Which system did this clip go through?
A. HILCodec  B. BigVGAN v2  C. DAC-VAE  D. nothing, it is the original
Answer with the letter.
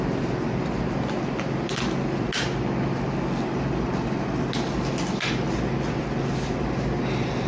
D